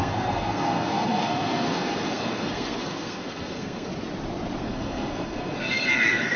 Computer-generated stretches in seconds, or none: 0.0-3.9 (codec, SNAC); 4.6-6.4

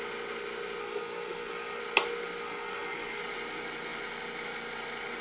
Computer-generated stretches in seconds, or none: 0.8-1.8 (codec, SNAC); 2.4-3.2

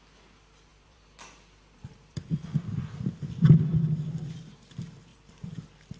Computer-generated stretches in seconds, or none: 0.7-4.3 (vocoder, BigVGAN v2); 5.1-6.0

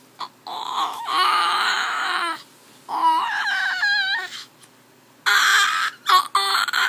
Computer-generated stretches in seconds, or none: 0.5-2.4 (autoencoder, DAC-VAE); 3.0-4.5

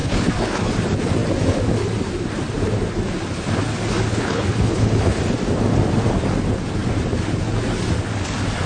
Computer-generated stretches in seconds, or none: 0.0-0.7 (codec, HILCodec); 4.1-5.2

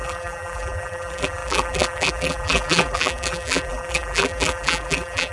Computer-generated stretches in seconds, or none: 0.0-5.3 (vocoder, BigVGAN v2)

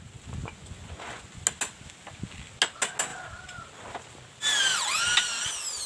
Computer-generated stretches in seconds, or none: 0.4-1.4 (vocoder, Vocos)

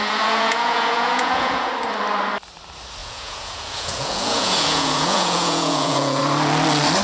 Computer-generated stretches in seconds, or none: 0.0-1.7 (vocoder, Vocos); 3.0-6.2